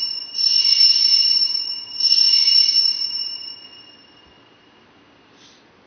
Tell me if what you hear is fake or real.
fake